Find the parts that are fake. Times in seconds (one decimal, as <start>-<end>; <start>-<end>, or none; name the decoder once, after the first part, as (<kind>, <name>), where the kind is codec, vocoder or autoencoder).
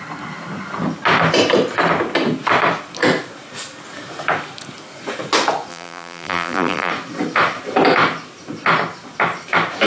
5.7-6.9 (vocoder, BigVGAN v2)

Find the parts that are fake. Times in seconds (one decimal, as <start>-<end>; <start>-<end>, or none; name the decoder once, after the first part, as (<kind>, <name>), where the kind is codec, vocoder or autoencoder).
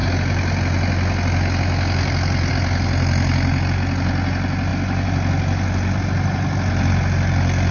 none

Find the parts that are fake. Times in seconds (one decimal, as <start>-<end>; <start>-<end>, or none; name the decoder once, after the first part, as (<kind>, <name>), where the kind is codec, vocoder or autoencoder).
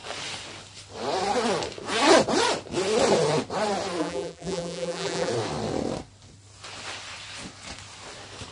4.0-5.3 (vocoder, BigVGAN v2)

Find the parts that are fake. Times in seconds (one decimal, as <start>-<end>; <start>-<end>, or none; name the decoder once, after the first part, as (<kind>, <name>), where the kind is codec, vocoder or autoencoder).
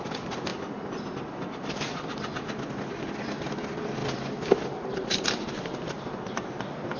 4.0-7.0 (vocoder, BigVGAN v2)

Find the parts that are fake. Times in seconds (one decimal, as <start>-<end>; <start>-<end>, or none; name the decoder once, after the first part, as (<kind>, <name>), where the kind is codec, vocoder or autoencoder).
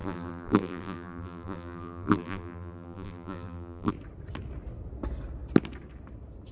0.0-3.9 (vocoder, BigVGAN v2)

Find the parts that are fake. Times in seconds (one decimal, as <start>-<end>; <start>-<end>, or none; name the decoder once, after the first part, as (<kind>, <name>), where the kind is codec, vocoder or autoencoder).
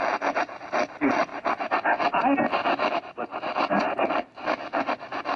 none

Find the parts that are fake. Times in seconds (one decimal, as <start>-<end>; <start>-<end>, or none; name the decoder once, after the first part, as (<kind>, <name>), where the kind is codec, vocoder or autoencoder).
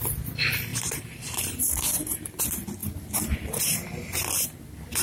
0.7-2.4 (vocoder, BigVGAN v2); 2.8-3.6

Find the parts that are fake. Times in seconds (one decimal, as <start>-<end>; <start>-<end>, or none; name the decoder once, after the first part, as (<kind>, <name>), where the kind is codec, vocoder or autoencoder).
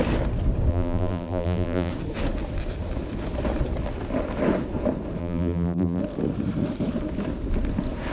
0.7-1.9 (vocoder, BigVGAN v2); 5.2-6.0